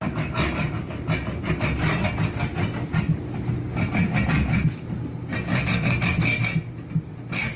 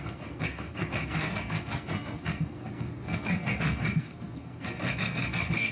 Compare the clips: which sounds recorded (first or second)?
first